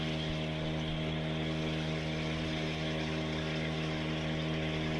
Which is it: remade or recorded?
recorded